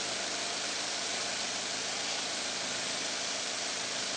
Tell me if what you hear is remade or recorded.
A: recorded